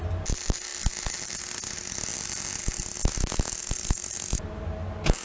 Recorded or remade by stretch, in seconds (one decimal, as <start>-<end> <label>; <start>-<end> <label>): 0.0-5.2 recorded